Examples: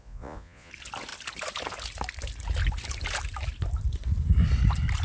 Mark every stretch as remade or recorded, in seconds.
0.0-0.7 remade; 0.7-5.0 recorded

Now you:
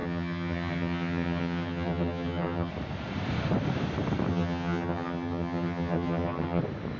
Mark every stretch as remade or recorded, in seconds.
0.0-2.7 remade; 2.7-4.3 recorded; 4.3-6.6 remade; 6.6-7.0 recorded

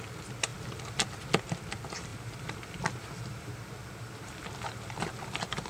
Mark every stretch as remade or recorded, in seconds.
0.0-2.1 recorded; 2.1-5.7 remade

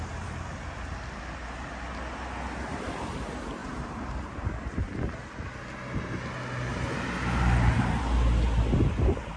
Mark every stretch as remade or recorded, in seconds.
0.0-3.6 recorded; 3.6-4.8 remade; 4.8-6.7 recorded; 6.7-8.0 remade; 8.0-9.4 recorded

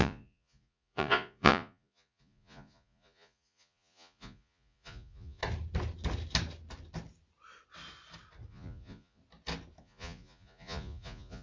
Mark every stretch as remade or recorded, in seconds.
0.0-5.4 remade; 5.4-8.5 recorded; 8.5-9.2 remade; 9.2-9.8 recorded; 9.8-11.4 remade

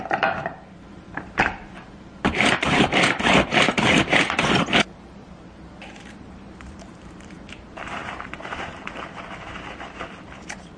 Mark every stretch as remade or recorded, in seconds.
0.0-10.8 remade

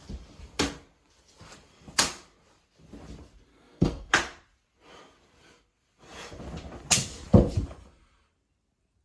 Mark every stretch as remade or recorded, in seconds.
0.0-3.5 recorded; 3.5-4.1 remade; 4.1-9.0 recorded

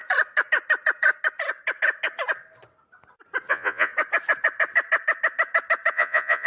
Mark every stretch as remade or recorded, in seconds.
0.0-3.5 recorded; 3.5-3.9 remade; 3.9-5.9 recorded; 5.9-6.5 remade